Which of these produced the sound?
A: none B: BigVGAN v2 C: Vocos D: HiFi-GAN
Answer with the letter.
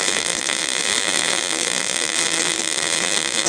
B